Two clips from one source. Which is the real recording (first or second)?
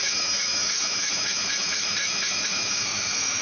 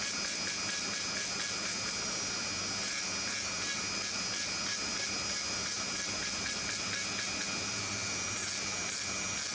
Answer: second